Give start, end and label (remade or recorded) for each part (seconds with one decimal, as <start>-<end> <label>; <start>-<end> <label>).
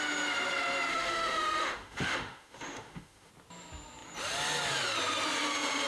0.0-0.9 recorded; 0.9-3.3 remade; 3.3-5.9 recorded